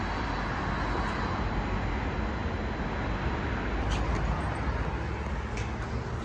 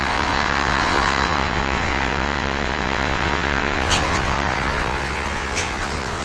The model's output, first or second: second